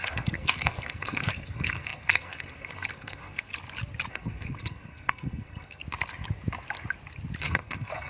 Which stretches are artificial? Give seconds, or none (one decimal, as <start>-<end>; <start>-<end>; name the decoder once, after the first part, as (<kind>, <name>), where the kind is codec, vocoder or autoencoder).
0.0-3.5 (codec, SNAC); 4.1-5.8; 7.4-8.1